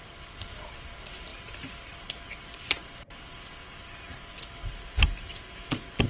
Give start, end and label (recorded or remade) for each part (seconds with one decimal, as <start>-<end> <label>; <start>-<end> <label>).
0.0-0.7 remade; 0.7-6.1 recorded